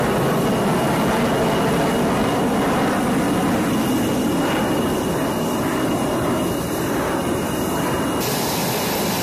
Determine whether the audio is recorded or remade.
recorded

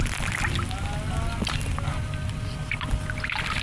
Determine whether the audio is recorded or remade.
recorded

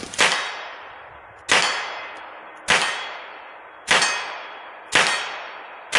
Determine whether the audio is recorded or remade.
recorded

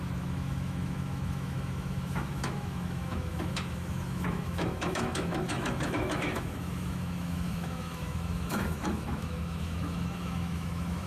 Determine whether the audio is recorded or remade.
remade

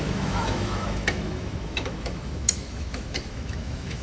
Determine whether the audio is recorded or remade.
remade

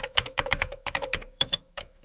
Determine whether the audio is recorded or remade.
remade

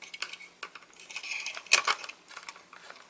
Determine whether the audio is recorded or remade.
recorded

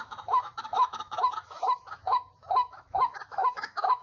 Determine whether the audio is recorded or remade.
remade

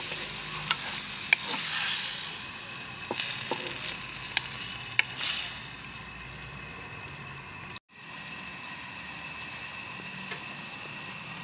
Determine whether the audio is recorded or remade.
recorded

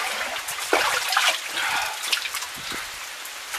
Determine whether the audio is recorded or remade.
recorded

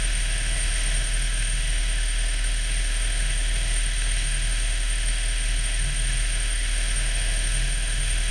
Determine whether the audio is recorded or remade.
remade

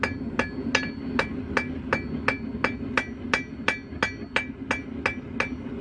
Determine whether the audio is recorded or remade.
recorded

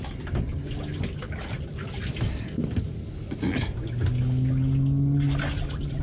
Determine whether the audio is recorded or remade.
recorded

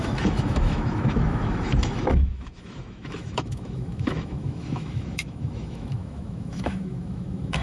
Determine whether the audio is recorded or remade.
remade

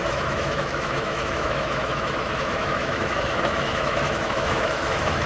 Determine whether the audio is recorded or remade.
remade